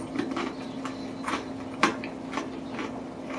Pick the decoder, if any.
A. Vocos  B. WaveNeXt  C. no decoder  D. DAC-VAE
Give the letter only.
C